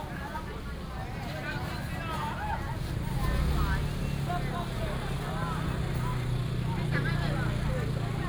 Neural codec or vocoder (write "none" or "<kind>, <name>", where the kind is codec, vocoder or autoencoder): none